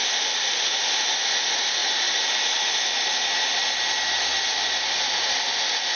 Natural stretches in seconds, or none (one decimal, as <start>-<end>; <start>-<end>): 0.0-6.0

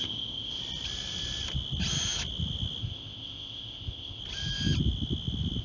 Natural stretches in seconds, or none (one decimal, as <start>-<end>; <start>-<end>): 0.6-2.8; 4.2-5.6

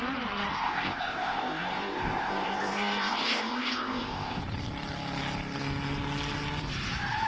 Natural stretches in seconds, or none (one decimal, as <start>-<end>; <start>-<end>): 0.0-0.5; 4.4-7.3

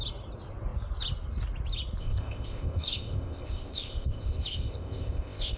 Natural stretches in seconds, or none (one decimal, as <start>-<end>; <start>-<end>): 0.0-2.0

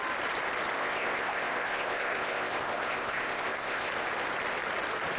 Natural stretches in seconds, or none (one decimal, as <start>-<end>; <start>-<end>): 0.0-0.8; 3.9-5.2

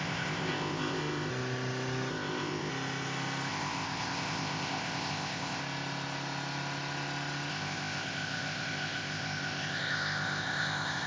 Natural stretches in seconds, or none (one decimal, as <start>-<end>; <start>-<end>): 1.3-2.1; 2.7-3.5; 5.6-7.5

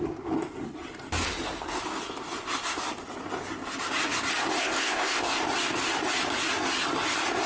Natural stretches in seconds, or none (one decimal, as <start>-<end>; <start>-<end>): 0.0-4.6; 5.4-7.5